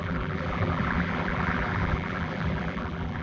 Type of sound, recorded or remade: remade